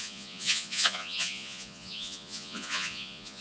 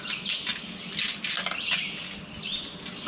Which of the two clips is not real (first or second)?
first